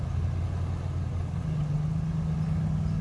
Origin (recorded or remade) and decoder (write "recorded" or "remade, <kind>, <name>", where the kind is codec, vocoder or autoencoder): recorded